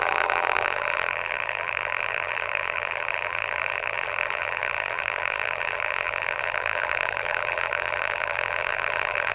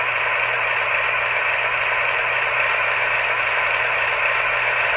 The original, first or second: second